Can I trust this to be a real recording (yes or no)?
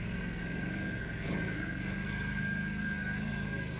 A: no